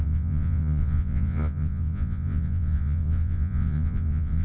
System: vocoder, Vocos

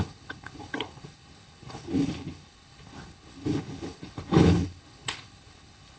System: codec, HILCodec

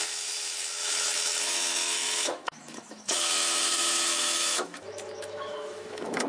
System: autoencoder, DAC-VAE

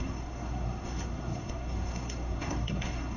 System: codec, SNAC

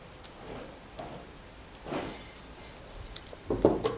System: none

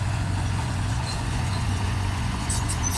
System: vocoder, Vocos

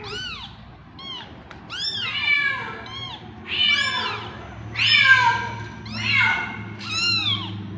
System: none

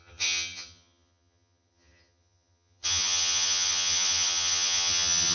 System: vocoder, HiFi-GAN